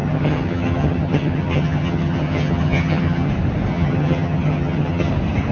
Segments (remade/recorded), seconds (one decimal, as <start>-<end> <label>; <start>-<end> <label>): 0.0-3.3 remade; 3.3-3.7 recorded; 3.7-5.1 remade; 5.1-5.5 recorded